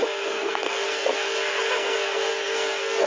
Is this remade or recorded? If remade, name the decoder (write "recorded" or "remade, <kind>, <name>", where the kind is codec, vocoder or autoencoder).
remade, codec, SNAC